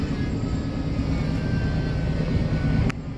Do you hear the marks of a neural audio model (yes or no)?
no